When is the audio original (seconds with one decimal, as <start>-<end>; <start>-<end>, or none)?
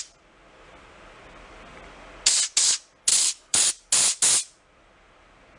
0.0-3.1; 3.7-5.6